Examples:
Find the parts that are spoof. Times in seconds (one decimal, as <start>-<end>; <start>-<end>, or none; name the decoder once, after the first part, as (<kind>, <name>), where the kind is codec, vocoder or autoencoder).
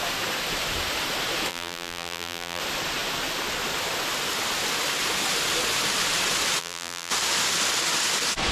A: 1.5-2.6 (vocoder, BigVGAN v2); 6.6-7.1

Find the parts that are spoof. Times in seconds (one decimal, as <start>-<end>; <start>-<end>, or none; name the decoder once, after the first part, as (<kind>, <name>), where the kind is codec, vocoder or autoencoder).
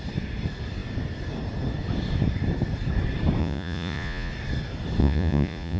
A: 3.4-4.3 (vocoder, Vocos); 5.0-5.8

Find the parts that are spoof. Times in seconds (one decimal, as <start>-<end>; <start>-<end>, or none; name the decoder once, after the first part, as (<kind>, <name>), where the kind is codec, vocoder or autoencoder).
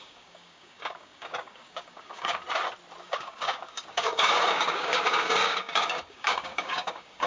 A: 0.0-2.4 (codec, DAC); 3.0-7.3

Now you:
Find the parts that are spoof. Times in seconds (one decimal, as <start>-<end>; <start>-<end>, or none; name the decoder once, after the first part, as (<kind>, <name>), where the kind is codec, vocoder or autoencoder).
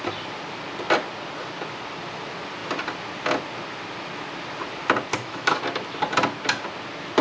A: 5.1-5.6 (autoencoder, DAC-VAE)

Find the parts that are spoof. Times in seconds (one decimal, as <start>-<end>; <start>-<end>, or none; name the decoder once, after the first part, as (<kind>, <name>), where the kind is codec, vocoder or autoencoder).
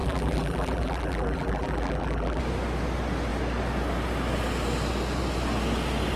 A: 0.0-2.4 (vocoder, BigVGAN v2)